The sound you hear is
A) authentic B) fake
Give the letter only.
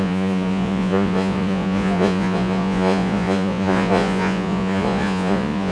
B